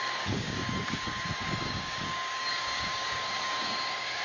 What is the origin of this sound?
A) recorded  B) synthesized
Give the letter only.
B